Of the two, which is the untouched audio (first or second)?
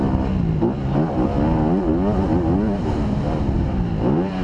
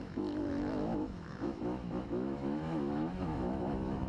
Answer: first